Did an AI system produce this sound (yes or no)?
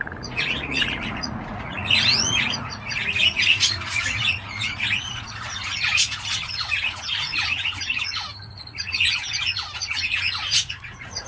yes